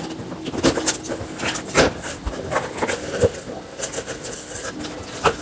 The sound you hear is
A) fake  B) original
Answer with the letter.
B